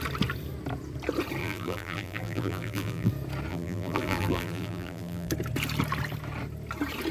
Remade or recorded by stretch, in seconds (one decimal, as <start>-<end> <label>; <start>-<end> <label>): 0.0-1.4 recorded; 1.4-3.1 remade; 3.1-3.5 recorded; 3.5-5.3 remade; 5.3-7.1 recorded